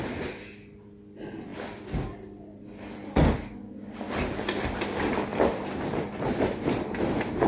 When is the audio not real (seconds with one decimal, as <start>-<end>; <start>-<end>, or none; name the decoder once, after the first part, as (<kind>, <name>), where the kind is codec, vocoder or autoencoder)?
5.3-7.5 (vocoder, BigVGAN v2)